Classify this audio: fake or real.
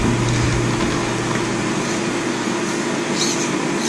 real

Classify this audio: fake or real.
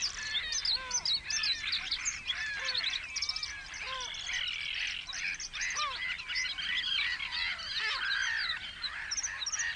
real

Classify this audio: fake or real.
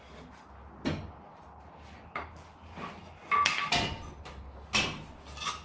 real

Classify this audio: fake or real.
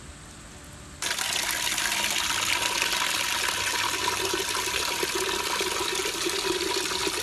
real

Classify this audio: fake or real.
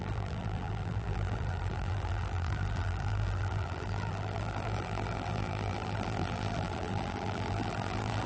fake